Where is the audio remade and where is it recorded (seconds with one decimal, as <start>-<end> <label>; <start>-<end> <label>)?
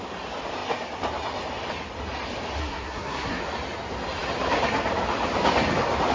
0.0-2.6 recorded; 2.6-3.4 remade; 3.4-6.1 recorded